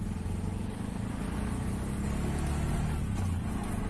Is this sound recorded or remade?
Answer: recorded